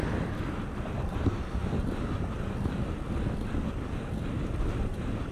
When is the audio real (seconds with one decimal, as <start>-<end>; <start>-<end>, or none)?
0.0-5.3